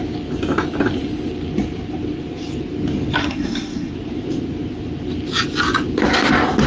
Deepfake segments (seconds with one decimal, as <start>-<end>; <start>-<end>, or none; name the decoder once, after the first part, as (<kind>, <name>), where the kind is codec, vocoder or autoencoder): 3.2-3.9 (codec, SNAC)